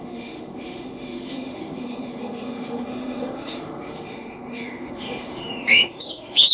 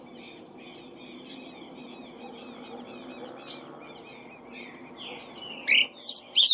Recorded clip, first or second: second